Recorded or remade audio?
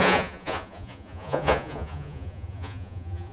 remade